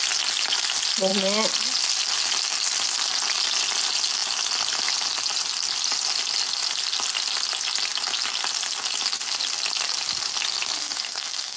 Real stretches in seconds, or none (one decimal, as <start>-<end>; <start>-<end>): 0.0-10.8